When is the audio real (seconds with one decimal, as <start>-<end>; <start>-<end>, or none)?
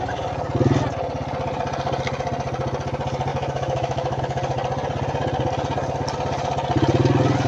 0.0-3.3; 4.2-7.5